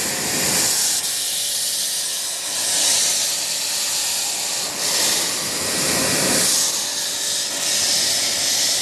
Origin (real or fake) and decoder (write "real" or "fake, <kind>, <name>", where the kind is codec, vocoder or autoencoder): real